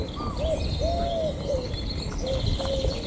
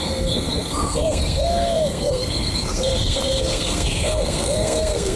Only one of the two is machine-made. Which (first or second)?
second